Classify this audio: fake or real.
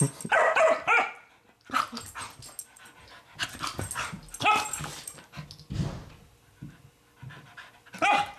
real